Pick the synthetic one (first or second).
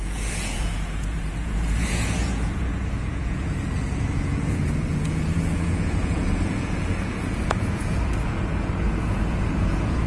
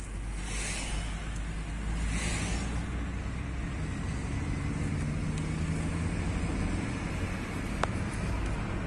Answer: first